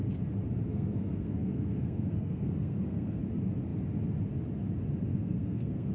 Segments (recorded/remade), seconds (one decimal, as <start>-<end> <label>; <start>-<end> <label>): 0.0-0.7 recorded; 0.7-3.2 remade; 3.2-5.1 recorded; 5.1-5.9 remade